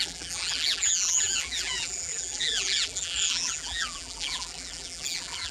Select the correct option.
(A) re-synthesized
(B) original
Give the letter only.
A